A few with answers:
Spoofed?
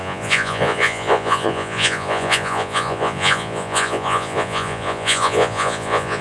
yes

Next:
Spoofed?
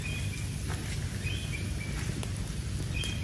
no